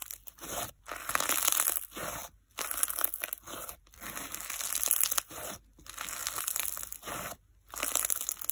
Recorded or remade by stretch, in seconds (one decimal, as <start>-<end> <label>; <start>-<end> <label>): 0.0-8.5 recorded